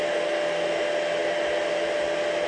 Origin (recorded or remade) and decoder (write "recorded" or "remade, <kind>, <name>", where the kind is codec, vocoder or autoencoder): recorded